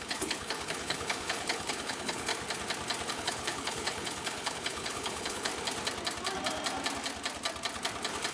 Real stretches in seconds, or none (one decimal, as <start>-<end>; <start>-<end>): 2.3-3.1; 5.5-8.3